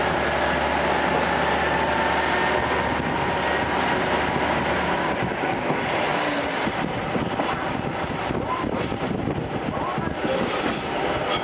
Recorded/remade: recorded